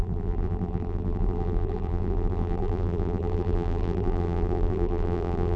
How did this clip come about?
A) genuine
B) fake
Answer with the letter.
B